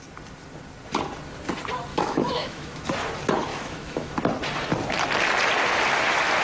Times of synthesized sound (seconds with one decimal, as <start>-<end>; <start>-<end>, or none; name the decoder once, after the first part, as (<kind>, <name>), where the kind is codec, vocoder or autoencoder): 1.9-2.8 (autoencoder, DAC-VAE); 3.5-4.1